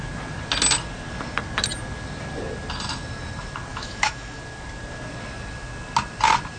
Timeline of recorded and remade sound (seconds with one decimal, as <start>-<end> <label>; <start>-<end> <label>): 0.0-3.7 recorded; 3.7-4.4 remade; 4.4-6.6 recorded